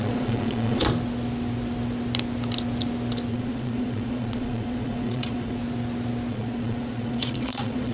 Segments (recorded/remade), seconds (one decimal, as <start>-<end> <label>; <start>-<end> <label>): 0.0-0.8 remade; 0.8-3.3 recorded; 3.3-5.6 remade; 5.6-6.3 recorded; 6.3-7.9 remade